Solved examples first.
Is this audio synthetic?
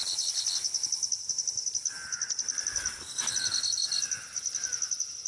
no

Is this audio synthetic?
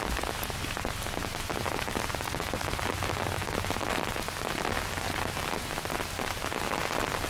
no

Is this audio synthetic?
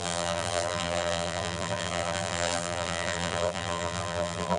yes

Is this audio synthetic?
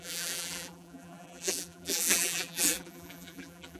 yes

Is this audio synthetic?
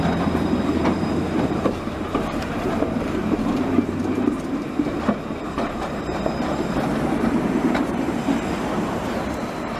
yes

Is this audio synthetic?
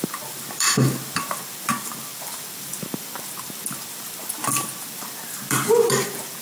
yes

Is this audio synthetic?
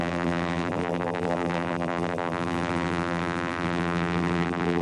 yes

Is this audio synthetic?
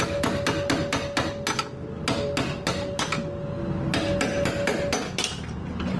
no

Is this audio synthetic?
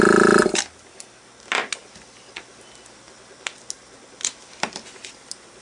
no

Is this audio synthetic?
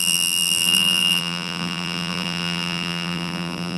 yes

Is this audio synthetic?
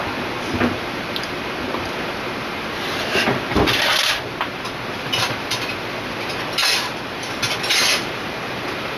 yes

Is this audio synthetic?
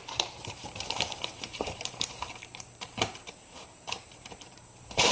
yes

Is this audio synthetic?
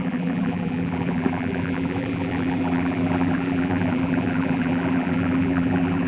yes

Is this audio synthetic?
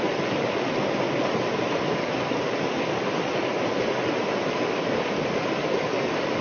no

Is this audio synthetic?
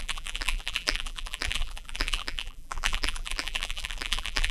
yes